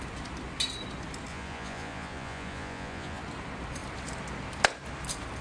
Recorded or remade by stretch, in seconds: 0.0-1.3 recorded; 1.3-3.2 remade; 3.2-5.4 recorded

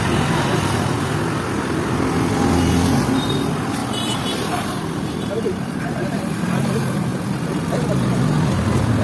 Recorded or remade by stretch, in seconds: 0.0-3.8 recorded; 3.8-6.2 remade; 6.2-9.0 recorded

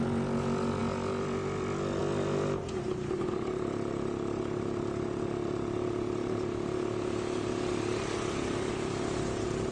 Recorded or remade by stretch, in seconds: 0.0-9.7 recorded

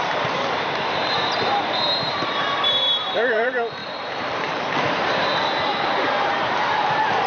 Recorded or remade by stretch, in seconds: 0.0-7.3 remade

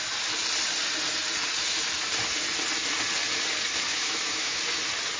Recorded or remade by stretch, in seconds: 0.0-3.9 recorded; 3.9-4.6 remade; 4.6-5.2 recorded

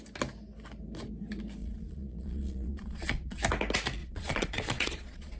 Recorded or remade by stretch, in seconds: 0.0-1.6 recorded; 1.6-3.4 remade; 3.4-4.0 recorded; 4.0-5.4 remade